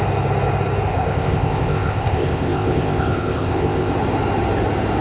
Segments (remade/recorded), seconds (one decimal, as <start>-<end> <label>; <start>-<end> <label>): 0.0-0.9 recorded; 0.9-3.9 remade; 3.9-5.0 recorded